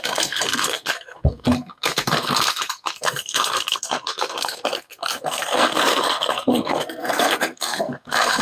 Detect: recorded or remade remade